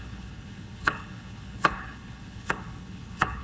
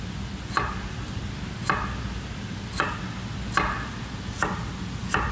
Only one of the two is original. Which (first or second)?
second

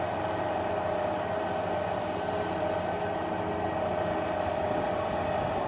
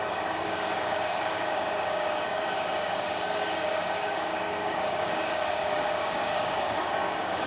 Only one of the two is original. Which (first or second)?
first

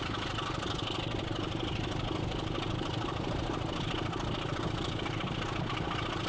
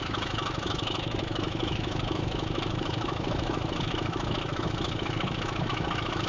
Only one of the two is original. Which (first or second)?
first